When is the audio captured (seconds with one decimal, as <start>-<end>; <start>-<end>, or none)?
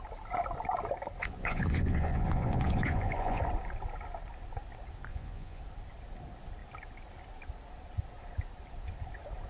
0.0-1.2; 3.4-5.1; 5.6-9.5